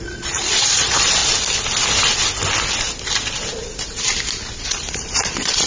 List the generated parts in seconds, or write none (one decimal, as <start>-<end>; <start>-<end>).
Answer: 0.0-1.2; 4.6-5.7